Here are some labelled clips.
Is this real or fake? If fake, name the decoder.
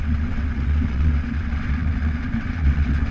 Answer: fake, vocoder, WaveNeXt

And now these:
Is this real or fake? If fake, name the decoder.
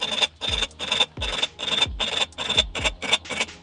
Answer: real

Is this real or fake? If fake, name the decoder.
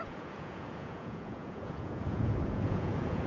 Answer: fake, vocoder, Vocos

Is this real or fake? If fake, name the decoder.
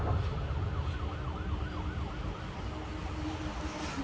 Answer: real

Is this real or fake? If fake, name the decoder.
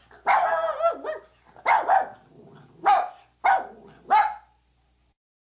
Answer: real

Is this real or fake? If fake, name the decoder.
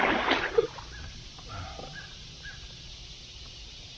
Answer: real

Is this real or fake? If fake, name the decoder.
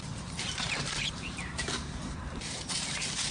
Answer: fake, vocoder, BigVGAN v2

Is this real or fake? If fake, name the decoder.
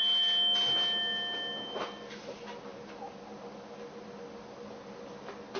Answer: real